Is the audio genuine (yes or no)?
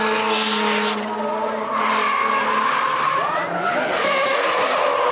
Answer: yes